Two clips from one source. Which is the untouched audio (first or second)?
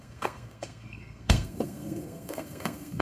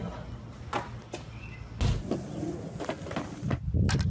second